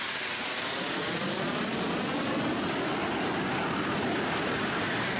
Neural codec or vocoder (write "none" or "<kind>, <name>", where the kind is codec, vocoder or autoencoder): vocoder, BigVGAN v2